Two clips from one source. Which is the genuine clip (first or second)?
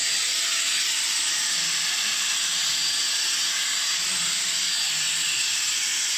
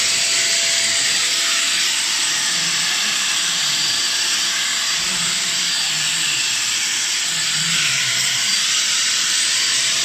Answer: first